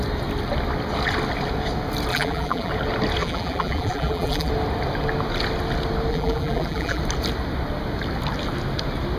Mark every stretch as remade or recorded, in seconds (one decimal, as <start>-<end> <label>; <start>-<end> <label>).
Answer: 0.0-2.1 recorded; 2.1-2.7 remade; 2.7-3.2 recorded; 3.2-4.5 remade; 4.5-6.1 recorded; 6.1-7.0 remade; 7.0-9.2 recorded